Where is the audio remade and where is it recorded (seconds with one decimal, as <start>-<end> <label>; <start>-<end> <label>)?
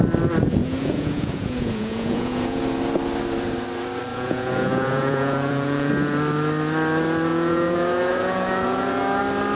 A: 0.0-0.6 recorded; 0.6-2.6 remade; 2.6-4.1 recorded; 4.1-5.9 remade; 5.9-7.3 recorded; 7.3-9.2 remade; 9.2-9.6 recorded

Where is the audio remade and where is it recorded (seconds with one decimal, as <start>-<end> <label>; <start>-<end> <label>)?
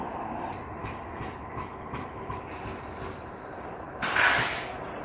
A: 0.0-0.8 recorded; 0.8-2.5 remade; 2.5-5.0 recorded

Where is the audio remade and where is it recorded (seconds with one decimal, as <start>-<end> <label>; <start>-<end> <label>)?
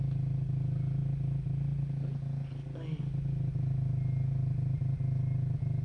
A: 0.0-5.8 recorded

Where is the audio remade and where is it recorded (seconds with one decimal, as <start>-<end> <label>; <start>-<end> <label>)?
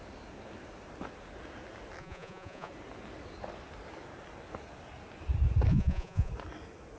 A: 0.0-2.0 recorded; 2.0-2.7 remade; 2.7-5.7 recorded; 5.7-6.3 remade; 6.3-7.0 recorded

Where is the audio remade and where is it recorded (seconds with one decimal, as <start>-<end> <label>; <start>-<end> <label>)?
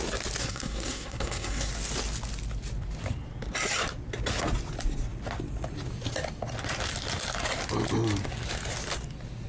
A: 0.0-0.4 recorded; 0.4-1.7 remade; 1.7-9.5 recorded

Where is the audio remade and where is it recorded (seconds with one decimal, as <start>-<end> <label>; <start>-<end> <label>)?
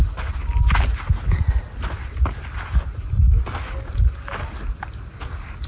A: 0.0-5.7 recorded